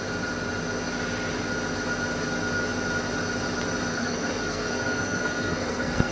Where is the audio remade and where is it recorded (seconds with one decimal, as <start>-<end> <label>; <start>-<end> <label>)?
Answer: 0.0-3.9 recorded; 3.9-6.1 remade